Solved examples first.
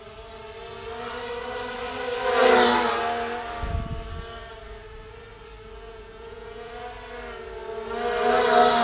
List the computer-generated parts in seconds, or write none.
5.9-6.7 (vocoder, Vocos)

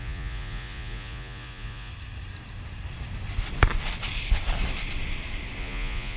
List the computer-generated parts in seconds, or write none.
0.0-1.9 (vocoder, Vocos); 5.6-6.2

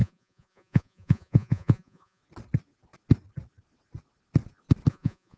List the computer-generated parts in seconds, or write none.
0.0-2.2 (vocoder, Vocos); 4.9-5.4

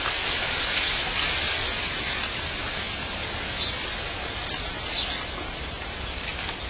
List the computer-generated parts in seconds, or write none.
none

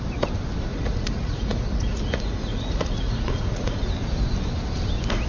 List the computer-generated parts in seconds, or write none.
0.7-3.9 (vocoder, Vocos)

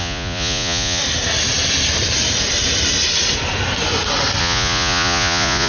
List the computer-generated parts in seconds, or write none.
0.0-1.0 (vocoder, Vocos); 4.4-5.7